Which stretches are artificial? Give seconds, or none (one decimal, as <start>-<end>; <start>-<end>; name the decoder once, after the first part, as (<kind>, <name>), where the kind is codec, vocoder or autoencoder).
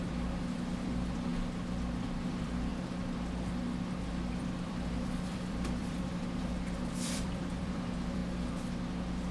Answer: 0.0-1.3 (vocoder, BigVGAN v2); 2.2-2.7; 4.1-8.2